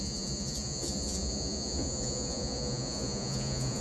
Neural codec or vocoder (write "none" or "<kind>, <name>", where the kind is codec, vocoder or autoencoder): vocoder, Vocos